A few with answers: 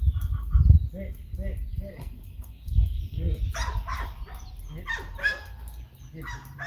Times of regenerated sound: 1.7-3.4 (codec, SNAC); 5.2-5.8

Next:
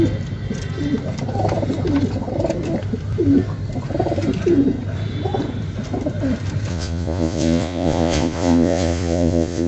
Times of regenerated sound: 6.7-9.7 (vocoder, Vocos)

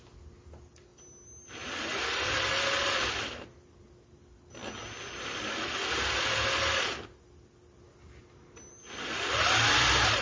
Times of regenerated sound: none

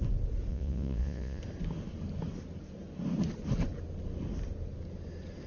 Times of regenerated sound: 0.5-1.4 (vocoder, Vocos)

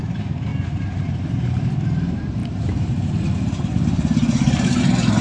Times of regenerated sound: 0.0-0.5 (vocoder, BigVGAN v2); 1.0-5.2